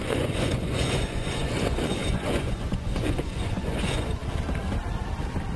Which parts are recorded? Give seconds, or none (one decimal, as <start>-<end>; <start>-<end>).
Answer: 4.2-5.6